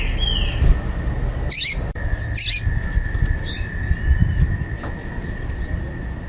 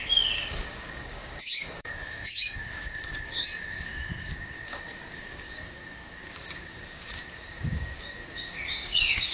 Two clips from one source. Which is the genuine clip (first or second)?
first